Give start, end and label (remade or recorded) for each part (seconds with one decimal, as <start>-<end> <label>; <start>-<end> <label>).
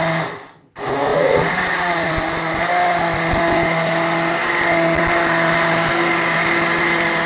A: 0.0-1.1 recorded; 1.1-2.1 remade; 2.1-7.3 recorded